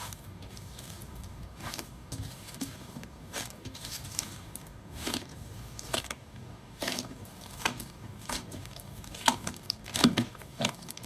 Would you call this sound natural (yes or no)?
no